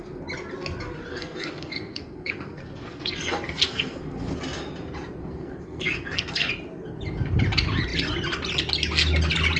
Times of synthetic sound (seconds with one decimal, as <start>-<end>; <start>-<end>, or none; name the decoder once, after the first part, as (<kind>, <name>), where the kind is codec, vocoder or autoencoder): 1.1-4.3 (codec, SNAC); 5.2-6.5